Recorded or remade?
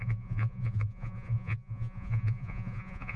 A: remade